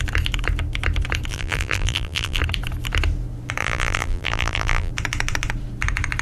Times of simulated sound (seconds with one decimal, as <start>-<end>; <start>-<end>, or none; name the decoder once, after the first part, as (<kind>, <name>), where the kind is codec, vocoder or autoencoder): 1.3-2.4 (vocoder, BigVGAN v2); 3.6-4.9